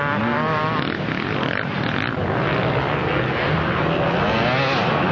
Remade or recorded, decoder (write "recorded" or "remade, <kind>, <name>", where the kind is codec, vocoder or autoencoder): recorded